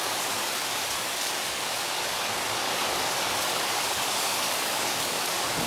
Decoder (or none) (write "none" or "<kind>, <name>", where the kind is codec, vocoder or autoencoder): codec, DAC